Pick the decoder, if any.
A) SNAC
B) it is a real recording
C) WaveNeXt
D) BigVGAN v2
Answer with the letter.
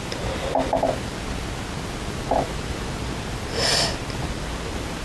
B